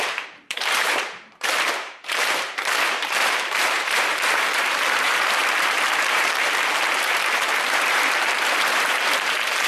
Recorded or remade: remade